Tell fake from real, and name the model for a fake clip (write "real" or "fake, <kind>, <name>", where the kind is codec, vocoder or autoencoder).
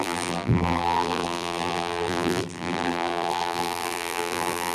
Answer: fake, vocoder, BigVGAN v2